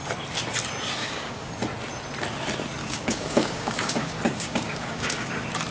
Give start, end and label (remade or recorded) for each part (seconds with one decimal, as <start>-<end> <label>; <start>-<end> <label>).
0.0-1.0 recorded; 1.0-1.5 remade; 1.5-2.8 recorded; 2.8-5.3 remade; 5.3-5.7 recorded